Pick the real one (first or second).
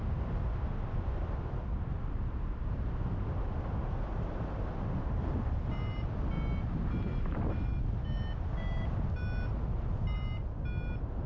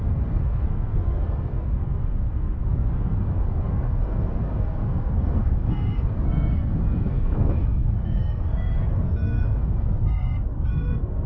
first